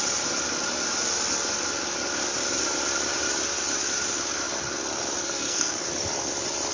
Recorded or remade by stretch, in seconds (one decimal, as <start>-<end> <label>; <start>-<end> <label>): 0.0-5.2 recorded; 5.2-5.9 remade; 5.9-6.7 recorded

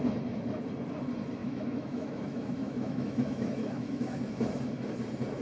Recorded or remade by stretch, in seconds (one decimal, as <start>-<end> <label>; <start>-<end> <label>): 0.0-1.4 recorded; 1.4-4.6 remade; 4.6-5.4 recorded

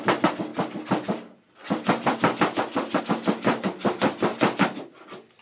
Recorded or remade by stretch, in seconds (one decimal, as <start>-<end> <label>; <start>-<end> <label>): 0.0-5.4 recorded

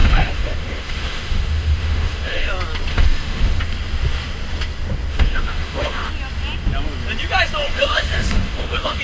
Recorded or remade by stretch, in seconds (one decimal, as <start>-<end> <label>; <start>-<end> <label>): 0.0-2.5 remade; 2.5-2.9 recorded; 2.9-3.6 remade; 3.6-5.1 recorded; 5.1-6.1 remade; 6.1-7.6 recorded; 7.6-9.0 remade

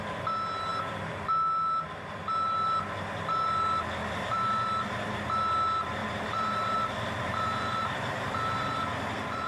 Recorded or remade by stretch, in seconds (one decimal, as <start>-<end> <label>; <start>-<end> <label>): 0.0-4.0 recorded; 4.0-4.8 remade; 4.8-6.0 recorded; 6.0-8.8 remade; 8.8-9.5 recorded

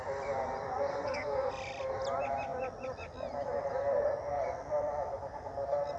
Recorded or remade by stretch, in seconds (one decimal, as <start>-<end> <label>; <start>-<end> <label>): 0.0-0.9 recorded; 0.9-1.5 remade; 1.5-6.0 recorded

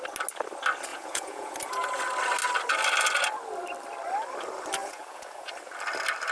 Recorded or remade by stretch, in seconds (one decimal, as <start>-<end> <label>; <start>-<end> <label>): 0.0-0.9 recorded; 0.9-2.0 remade; 2.0-4.8 recorded; 4.8-5.5 remade; 5.5-6.3 recorded

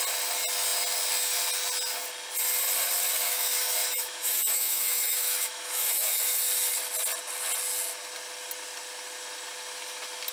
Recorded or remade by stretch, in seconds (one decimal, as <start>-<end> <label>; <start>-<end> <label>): 0.0-3.2 recorded; 3.2-6.5 remade; 6.5-10.3 recorded